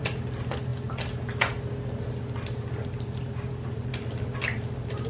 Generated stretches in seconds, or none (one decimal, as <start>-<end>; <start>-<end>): none